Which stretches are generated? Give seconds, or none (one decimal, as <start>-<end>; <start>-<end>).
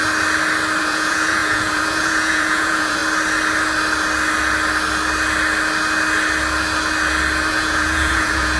0.8-3.0; 7.5-8.6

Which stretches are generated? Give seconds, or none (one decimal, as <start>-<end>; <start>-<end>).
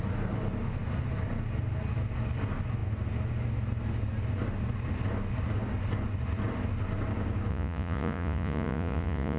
7.5-9.4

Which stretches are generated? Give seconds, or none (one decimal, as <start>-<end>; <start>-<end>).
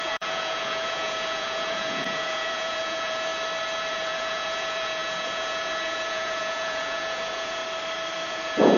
0.0-3.3; 3.9-7.6; 8.3-8.8